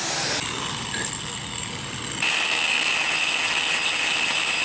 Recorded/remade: recorded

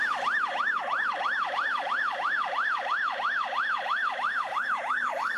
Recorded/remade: remade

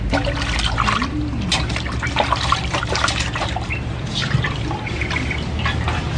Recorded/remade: recorded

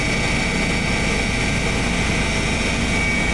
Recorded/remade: recorded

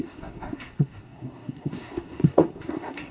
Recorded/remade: remade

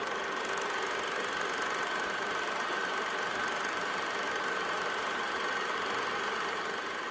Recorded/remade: recorded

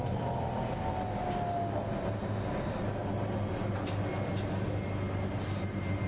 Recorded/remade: recorded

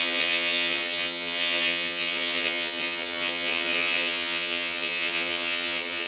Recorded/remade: remade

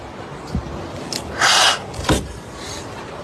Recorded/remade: recorded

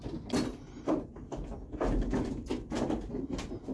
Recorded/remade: recorded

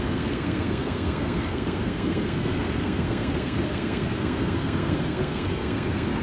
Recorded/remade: remade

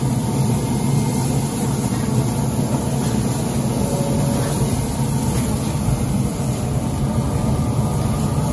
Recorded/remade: recorded